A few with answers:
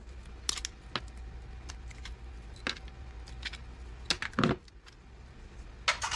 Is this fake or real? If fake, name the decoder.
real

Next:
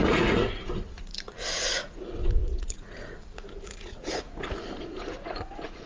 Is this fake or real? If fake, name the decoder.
fake, vocoder, Vocos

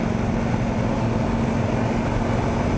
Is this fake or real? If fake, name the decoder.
real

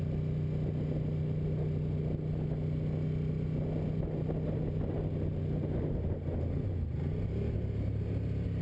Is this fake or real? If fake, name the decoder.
real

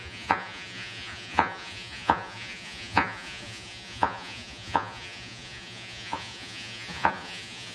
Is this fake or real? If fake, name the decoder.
fake, vocoder, Vocos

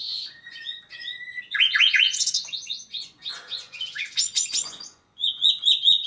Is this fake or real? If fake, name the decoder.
fake, vocoder, Vocos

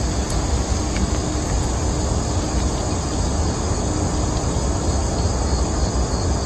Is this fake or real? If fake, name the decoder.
real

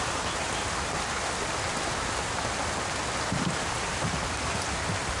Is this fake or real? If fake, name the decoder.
real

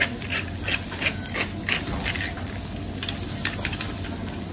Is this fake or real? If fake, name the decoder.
real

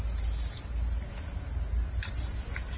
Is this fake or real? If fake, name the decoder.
real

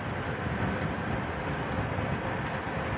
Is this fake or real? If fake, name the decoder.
real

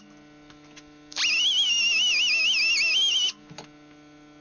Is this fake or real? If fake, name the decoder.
real